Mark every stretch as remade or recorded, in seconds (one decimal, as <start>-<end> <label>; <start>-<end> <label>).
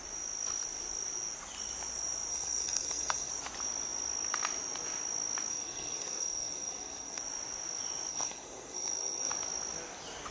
0.0-2.3 recorded; 2.3-3.3 remade; 3.3-5.5 recorded; 5.5-7.2 remade; 7.2-8.1 recorded; 8.1-9.3 remade; 9.3-10.3 recorded